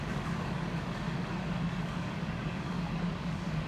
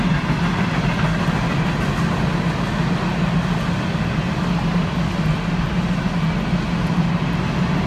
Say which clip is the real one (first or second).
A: second